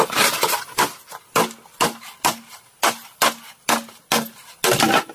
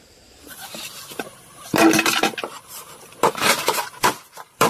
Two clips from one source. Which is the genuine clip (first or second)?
first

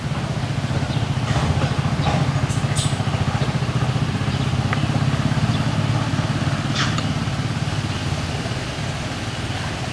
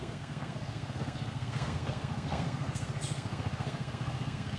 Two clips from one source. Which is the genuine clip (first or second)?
first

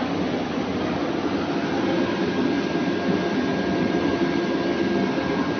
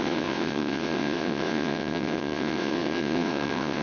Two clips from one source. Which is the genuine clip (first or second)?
first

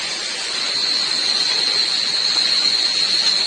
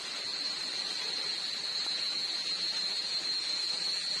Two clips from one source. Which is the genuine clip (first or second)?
second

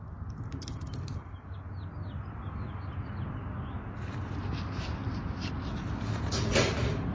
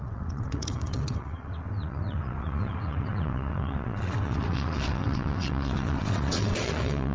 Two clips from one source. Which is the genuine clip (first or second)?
first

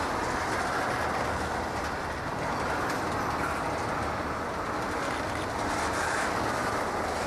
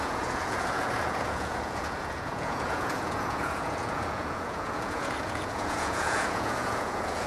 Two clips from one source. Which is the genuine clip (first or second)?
first